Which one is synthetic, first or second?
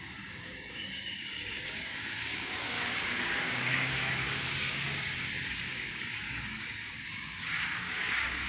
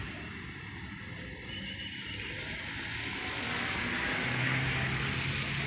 first